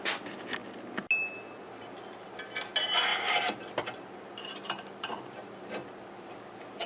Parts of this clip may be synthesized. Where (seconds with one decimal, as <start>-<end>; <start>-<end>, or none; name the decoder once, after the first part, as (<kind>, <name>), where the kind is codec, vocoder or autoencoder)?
3.1-5.6 (vocoder, BigVGAN v2)